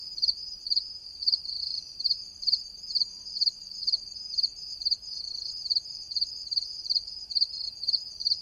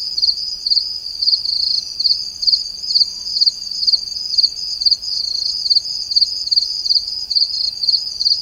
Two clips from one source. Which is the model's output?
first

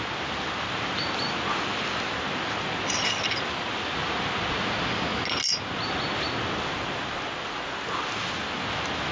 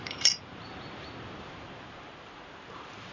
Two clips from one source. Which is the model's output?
second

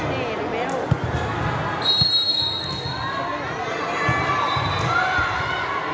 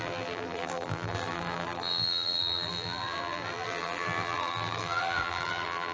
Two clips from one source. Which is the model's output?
second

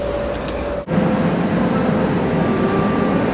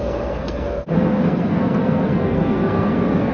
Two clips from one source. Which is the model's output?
second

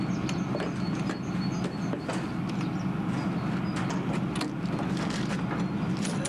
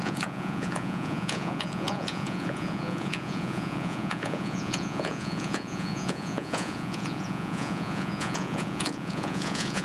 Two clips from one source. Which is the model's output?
second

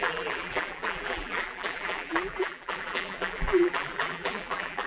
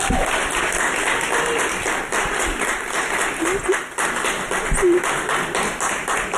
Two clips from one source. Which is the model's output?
first